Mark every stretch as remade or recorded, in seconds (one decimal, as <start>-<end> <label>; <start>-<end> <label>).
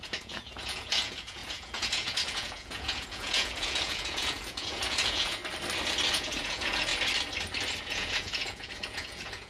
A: 0.0-5.4 remade; 5.4-6.1 recorded; 6.1-6.9 remade; 6.9-7.8 recorded; 7.8-9.5 remade